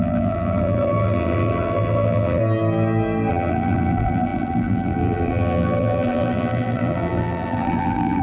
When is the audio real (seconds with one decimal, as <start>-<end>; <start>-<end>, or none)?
2.4-3.3